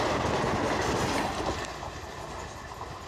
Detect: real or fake real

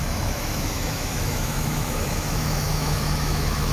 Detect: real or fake fake